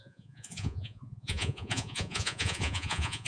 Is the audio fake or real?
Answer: fake